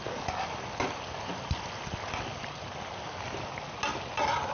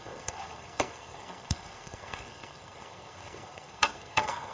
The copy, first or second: second